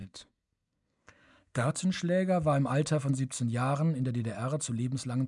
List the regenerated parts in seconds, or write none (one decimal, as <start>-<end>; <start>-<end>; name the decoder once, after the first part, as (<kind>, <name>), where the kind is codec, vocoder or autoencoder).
0.0-1.7 (codec, SNAC)